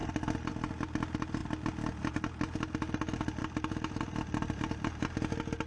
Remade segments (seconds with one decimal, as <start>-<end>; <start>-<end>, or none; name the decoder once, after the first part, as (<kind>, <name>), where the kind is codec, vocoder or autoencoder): none